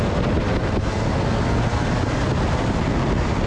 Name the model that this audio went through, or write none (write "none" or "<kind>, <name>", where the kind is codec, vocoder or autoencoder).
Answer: none